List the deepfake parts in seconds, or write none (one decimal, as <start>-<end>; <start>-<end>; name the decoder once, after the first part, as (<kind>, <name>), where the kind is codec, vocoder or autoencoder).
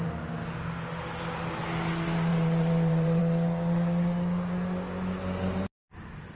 2.3-3.2 (vocoder, BigVGAN v2)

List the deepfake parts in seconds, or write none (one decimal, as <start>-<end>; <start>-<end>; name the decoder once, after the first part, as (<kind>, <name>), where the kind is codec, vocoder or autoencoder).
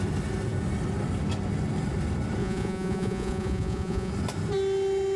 2.4-4.1 (vocoder, Vocos)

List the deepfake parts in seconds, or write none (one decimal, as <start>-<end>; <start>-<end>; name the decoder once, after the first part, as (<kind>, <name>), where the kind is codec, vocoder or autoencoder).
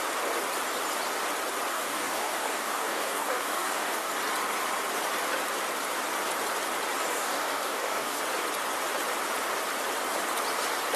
1.7-4.1 (codec, DAC); 7.1-8.2